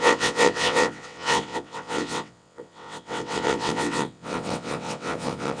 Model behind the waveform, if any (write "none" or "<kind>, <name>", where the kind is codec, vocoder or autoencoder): vocoder, WaveNeXt